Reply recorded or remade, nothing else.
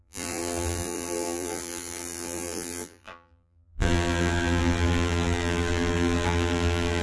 remade